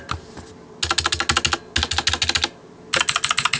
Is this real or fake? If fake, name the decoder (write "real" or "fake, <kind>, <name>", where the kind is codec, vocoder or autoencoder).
real